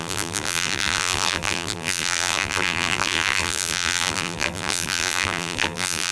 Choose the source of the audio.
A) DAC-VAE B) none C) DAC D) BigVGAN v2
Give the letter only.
D